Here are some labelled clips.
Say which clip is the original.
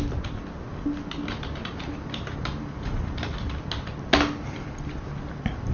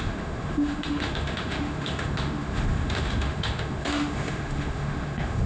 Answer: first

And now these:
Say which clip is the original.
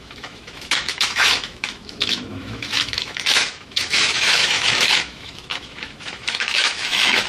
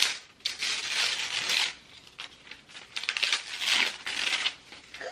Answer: second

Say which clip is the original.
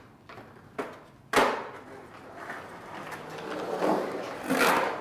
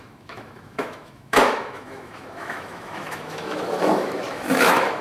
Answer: first